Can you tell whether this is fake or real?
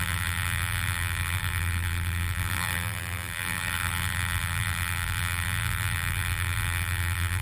fake